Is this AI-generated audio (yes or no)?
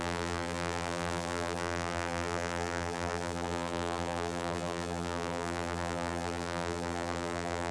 yes